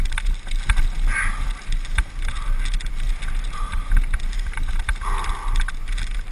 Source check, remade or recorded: recorded